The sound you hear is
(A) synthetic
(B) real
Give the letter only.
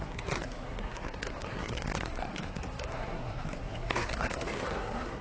A